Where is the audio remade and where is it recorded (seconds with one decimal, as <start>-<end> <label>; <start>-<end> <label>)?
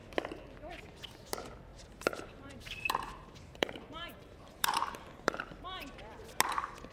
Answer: 0.0-1.7 recorded; 1.7-5.6 remade; 5.6-6.9 recorded